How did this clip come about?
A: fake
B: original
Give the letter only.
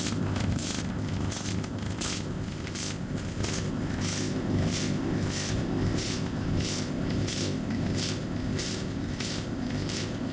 A